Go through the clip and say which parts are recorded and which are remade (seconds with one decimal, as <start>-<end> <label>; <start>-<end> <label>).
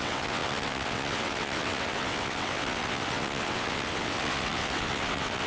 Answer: 0.0-5.5 remade